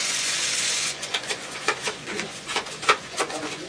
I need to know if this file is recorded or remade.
remade